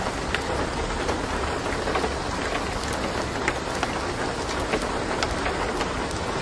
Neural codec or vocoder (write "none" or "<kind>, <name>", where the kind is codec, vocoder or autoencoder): none